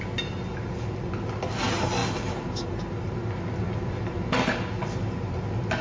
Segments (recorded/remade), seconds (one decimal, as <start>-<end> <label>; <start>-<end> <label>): 0.0-5.8 recorded